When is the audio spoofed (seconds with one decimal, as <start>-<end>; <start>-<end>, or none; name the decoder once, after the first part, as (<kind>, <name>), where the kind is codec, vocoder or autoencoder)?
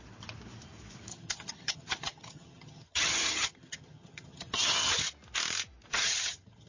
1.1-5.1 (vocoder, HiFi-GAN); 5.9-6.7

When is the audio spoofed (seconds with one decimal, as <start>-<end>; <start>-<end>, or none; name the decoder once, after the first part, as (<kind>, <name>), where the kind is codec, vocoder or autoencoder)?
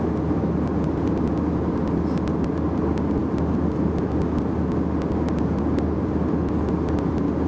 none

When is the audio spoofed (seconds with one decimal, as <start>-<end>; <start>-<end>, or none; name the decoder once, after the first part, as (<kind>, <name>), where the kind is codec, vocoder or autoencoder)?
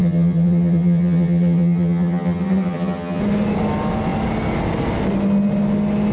0.0-3.2 (vocoder, HiFi-GAN)